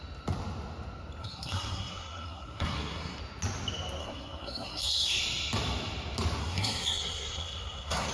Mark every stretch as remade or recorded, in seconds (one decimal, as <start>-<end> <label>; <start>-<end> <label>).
0.0-1.2 recorded; 1.2-3.2 remade; 3.2-4.0 recorded; 4.0-5.2 remade; 5.2-6.4 recorded; 6.4-8.1 remade